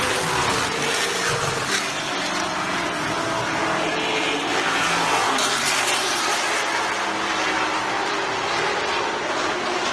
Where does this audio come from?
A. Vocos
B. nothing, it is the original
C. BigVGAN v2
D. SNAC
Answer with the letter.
B